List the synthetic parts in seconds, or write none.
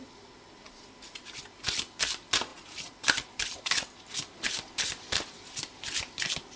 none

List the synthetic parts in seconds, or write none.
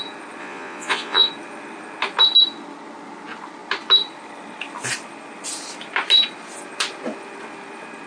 0.4-1.3 (vocoder, Vocos)